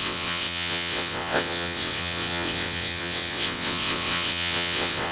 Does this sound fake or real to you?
fake